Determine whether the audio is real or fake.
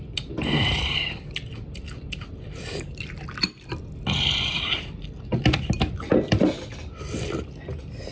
real